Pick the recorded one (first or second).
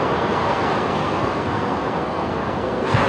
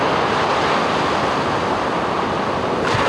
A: second